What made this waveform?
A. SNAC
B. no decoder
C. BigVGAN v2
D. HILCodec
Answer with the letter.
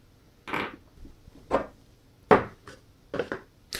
B